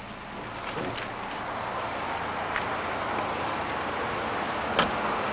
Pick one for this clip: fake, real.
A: real